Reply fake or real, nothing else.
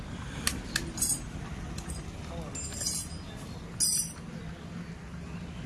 real